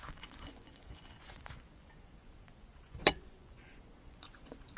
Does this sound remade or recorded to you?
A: remade